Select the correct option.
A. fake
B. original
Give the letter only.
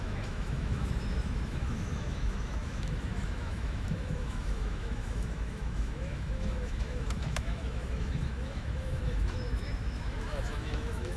A